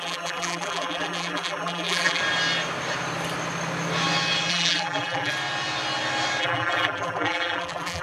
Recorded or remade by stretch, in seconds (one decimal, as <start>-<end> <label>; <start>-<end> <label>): 0.0-2.2 remade; 2.2-4.5 recorded; 4.5-5.3 remade; 5.3-6.4 recorded; 6.4-8.0 remade